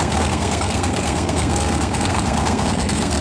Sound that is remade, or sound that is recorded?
remade